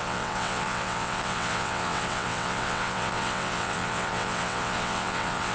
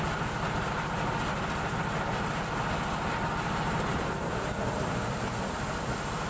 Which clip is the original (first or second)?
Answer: second